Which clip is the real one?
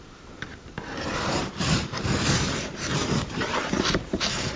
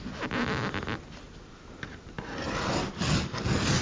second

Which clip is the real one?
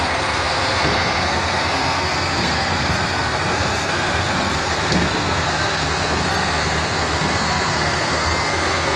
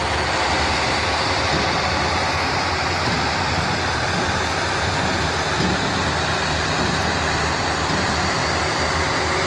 second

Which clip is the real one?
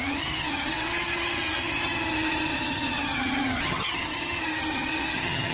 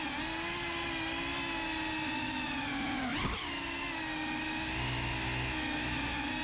second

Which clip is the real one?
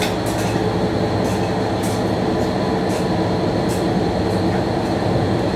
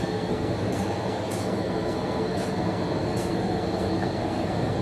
first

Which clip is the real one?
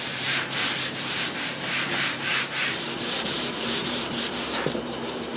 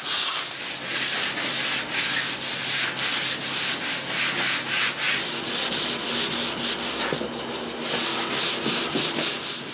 second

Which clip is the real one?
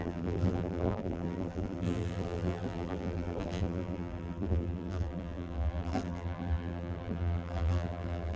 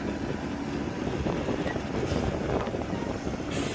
second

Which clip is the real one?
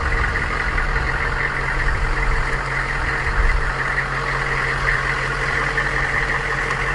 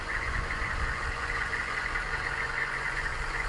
first